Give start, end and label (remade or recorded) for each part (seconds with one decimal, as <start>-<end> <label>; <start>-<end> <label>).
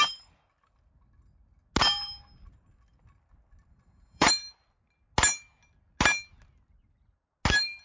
0.0-3.7 recorded; 3.7-4.3 remade; 4.3-7.8 recorded